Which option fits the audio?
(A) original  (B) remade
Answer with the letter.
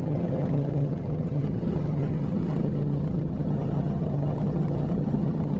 B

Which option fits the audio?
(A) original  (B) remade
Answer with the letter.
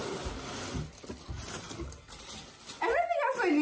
A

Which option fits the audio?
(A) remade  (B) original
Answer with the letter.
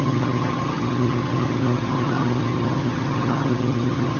A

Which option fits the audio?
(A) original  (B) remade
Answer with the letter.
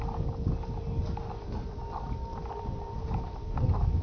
A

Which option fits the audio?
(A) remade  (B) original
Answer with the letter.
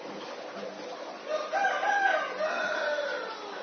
B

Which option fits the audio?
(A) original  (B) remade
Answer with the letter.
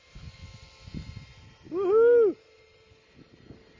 A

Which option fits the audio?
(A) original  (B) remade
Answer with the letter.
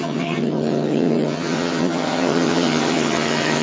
B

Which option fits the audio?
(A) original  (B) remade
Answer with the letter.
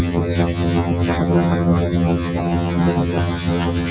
B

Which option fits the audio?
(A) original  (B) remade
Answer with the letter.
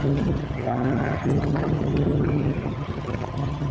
B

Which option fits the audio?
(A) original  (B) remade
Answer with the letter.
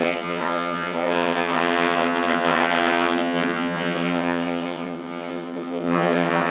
B